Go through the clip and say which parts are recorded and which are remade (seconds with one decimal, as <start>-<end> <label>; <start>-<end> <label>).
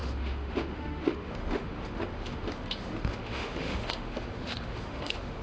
0.0-5.4 remade